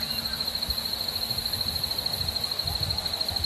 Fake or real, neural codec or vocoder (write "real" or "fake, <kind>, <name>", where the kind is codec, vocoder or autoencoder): real